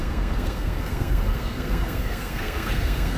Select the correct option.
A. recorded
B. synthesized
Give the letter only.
B